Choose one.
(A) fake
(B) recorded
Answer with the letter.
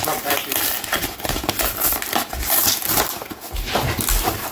B